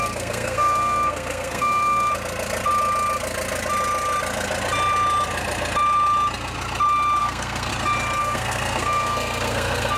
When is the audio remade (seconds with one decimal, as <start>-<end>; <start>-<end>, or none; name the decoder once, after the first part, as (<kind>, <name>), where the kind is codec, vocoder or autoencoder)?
0.0-2.1 (codec, SNAC); 7.2-7.7; 8.2-10.0